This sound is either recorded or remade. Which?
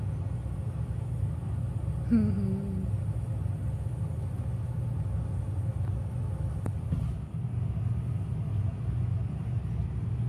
recorded